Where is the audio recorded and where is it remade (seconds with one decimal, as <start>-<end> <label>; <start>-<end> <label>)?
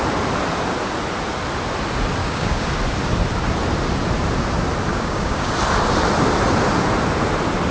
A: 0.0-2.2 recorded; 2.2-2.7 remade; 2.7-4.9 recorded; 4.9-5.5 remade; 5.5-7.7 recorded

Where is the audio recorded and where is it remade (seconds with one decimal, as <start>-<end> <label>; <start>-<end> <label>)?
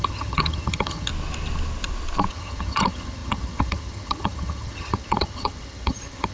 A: 0.0-1.1 remade; 1.1-2.3 recorded; 2.3-6.3 remade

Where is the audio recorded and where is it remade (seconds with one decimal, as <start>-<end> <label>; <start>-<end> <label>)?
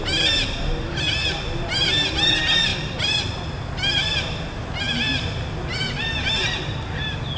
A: 0.0-7.4 recorded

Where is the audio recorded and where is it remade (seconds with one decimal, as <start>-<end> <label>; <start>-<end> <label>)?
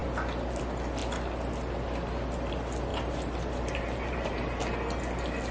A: 0.0-2.9 recorded; 2.9-4.6 remade; 4.6-5.5 recorded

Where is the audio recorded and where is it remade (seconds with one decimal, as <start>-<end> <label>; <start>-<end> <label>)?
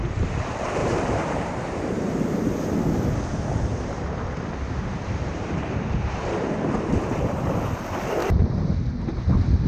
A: 0.0-0.8 recorded; 0.8-2.9 remade; 2.9-3.7 recorded; 3.7-7.5 remade; 7.5-8.2 recorded; 8.2-8.7 remade; 8.7-9.7 recorded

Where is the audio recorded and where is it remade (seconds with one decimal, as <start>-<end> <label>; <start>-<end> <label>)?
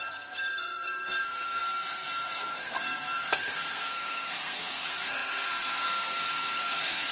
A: 0.0-7.1 remade